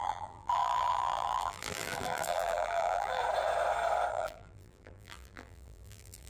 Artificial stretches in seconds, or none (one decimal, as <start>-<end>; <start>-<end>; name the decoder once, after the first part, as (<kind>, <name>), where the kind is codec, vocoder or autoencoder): 0.0-3.2 (vocoder, BigVGAN v2); 4.1-6.3